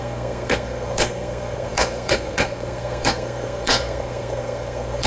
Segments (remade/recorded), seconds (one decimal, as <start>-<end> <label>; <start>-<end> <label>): 0.0-5.1 remade